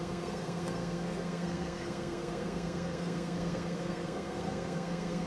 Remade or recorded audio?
remade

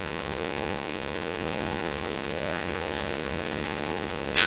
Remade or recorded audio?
remade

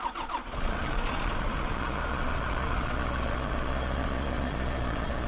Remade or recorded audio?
remade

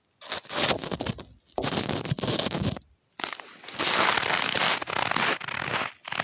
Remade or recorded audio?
recorded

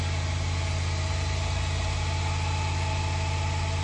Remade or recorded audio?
recorded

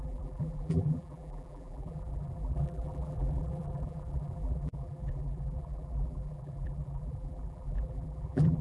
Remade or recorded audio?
remade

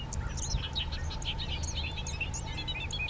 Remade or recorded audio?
recorded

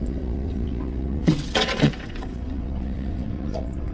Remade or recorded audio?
remade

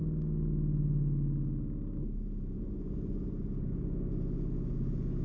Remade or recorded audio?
recorded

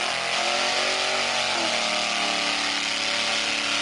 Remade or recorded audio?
recorded